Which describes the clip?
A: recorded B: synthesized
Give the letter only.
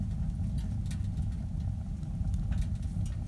A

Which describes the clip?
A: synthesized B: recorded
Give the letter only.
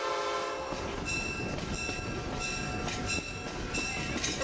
B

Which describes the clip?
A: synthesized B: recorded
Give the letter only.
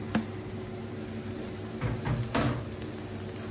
B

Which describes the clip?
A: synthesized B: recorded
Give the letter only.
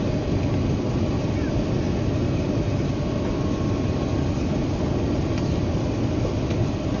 B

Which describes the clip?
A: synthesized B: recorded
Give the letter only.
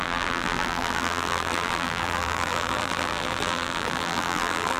A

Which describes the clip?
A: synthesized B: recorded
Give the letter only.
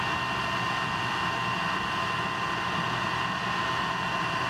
B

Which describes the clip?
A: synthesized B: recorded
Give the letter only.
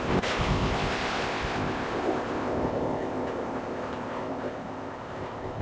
A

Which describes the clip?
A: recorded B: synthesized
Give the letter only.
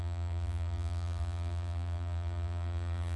B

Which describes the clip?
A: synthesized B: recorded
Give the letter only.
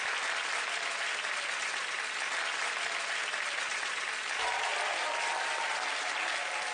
B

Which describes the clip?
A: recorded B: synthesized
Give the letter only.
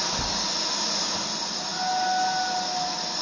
A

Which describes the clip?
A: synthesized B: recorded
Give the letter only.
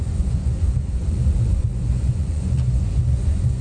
A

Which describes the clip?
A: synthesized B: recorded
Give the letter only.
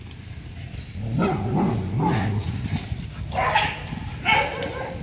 B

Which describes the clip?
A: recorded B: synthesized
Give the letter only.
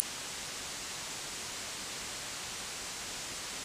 A